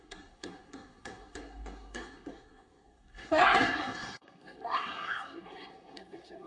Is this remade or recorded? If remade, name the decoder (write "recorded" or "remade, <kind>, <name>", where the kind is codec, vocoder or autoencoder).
remade, codec, SNAC